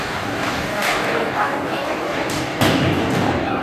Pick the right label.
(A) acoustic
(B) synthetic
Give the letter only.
B